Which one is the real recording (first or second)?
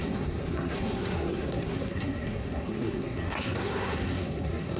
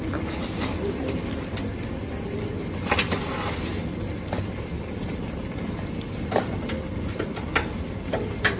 second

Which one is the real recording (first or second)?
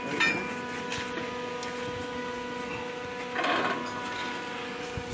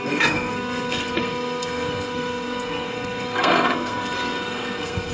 first